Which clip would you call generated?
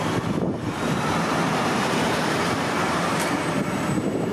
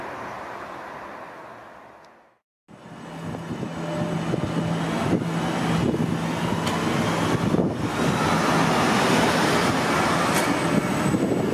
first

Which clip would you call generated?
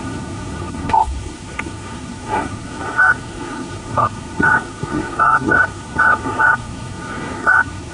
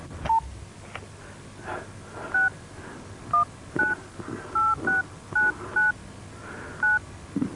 first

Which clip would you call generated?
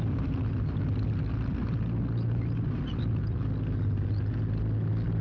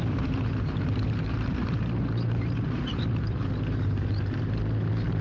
second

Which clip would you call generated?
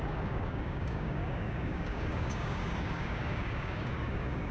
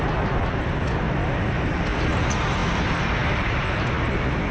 first